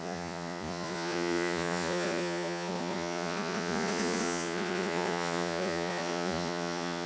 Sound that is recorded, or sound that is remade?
remade